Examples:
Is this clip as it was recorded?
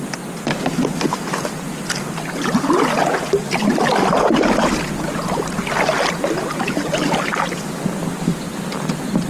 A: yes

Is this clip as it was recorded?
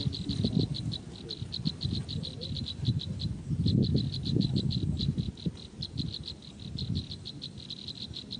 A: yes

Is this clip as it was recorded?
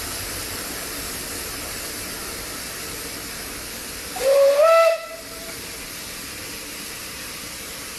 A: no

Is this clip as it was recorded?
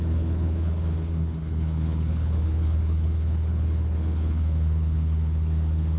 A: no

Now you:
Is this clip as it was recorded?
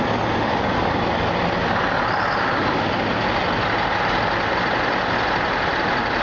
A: yes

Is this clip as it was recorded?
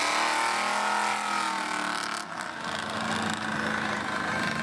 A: yes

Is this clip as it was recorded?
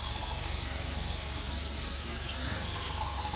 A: no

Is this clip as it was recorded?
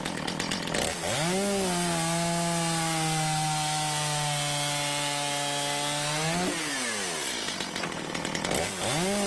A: yes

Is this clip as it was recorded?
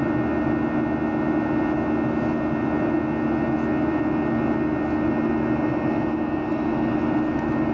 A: yes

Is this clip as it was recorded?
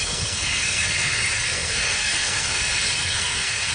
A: no